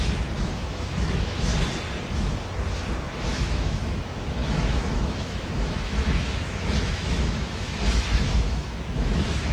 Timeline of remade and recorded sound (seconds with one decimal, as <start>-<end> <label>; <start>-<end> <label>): 0.0-1.5 remade; 1.5-3.0 recorded; 3.0-9.5 remade